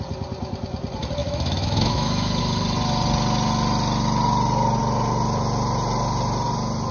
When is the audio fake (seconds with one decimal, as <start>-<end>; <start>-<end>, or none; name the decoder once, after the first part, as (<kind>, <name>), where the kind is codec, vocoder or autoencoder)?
1.2-2.4 (autoencoder, DAC-VAE)